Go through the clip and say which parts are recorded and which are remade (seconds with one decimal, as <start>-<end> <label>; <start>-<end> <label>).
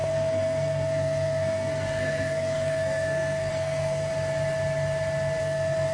0.0-4.1 remade; 4.1-5.4 recorded; 5.4-5.9 remade